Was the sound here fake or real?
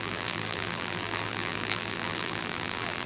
fake